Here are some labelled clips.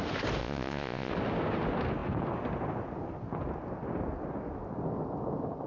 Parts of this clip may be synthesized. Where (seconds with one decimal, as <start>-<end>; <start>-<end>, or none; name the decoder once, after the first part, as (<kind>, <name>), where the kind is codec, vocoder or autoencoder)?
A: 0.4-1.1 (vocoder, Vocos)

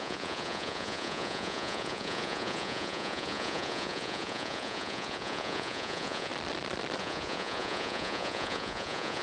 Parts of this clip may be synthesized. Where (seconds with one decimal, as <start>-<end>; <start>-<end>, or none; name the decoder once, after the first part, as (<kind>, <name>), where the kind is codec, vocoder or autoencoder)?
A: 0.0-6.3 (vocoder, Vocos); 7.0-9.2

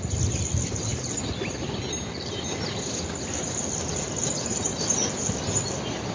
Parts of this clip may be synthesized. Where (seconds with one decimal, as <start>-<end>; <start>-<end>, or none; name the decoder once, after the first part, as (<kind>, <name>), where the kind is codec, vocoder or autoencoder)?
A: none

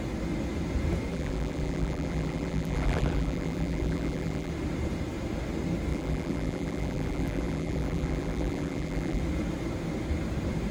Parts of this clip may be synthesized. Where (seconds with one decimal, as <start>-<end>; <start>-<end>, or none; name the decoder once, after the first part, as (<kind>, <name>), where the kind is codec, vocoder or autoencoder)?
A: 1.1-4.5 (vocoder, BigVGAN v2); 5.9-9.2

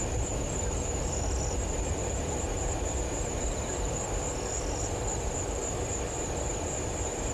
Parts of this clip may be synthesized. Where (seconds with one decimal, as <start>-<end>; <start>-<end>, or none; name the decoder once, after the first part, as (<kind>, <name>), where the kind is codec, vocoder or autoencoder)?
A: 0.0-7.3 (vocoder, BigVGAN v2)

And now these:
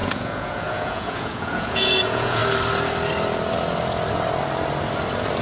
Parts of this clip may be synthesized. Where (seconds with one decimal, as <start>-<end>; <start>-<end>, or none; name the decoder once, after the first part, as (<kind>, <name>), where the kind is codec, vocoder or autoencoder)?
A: 0.0-2.4 (vocoder, Vocos)

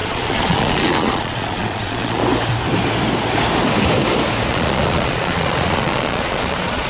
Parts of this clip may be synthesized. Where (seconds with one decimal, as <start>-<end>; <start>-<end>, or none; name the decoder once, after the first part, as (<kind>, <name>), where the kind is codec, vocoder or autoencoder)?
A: 0.0-2.2 (vocoder, Vocos); 4.5-6.9